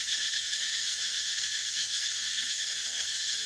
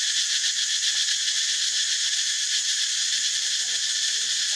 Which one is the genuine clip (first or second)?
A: second